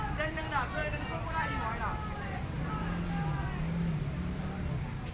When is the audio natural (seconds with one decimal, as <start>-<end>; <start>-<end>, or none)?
0.0-5.1

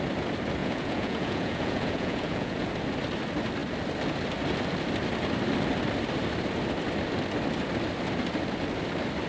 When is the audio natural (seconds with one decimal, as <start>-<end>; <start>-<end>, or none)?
0.0-0.6; 2.7-9.3

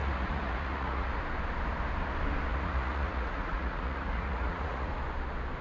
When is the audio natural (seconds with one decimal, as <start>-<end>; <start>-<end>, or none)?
1.1-2.5; 4.9-5.6

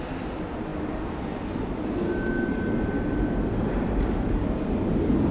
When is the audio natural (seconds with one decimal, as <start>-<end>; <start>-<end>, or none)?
0.0-5.3

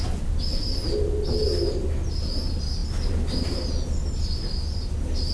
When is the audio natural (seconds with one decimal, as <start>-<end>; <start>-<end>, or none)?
0.0-5.3

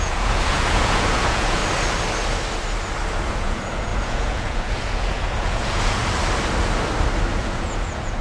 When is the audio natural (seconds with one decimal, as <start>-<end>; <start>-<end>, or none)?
1.6-3.3; 6.0-7.3

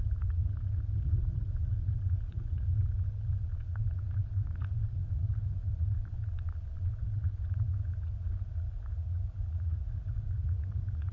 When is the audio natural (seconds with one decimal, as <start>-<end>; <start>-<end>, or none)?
6.0-6.9

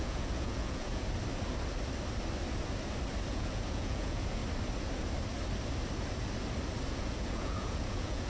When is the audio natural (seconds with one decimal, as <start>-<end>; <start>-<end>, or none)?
1.0-3.3; 4.4-6.9